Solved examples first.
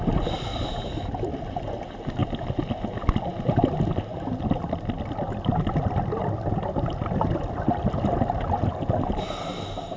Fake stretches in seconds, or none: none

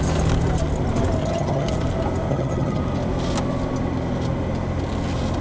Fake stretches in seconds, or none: 1.2-1.7 (vocoder, HiFi-GAN); 2.3-2.8

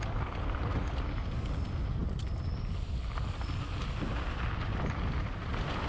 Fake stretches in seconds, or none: none

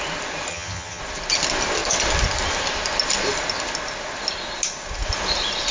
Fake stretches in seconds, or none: 0.5-1.0 (vocoder, HiFi-GAN)

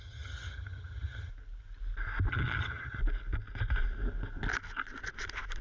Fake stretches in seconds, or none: 0.0-1.3 (vocoder, HiFi-GAN); 2.3-3.0

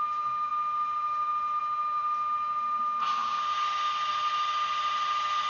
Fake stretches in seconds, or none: none

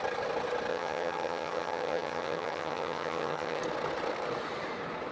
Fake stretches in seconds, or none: 0.7-3.6 (vocoder, HiFi-GAN)

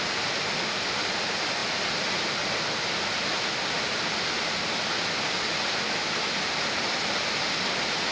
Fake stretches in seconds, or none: none